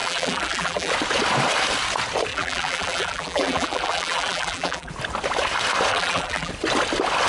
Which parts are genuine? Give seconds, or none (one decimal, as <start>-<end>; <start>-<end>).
0.9-2.3; 4.9-5.9; 6.5-7.3